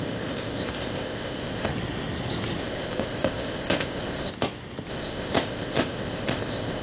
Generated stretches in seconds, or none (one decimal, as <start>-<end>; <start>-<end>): 0.0-1.7; 2.6-4.3; 4.9-6.8